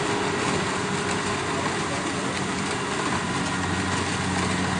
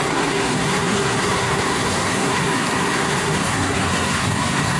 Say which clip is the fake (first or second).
second